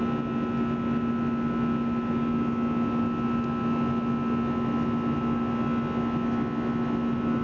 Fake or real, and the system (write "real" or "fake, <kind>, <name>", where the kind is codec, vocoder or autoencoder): real